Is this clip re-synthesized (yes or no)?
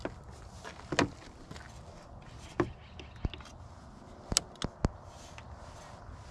no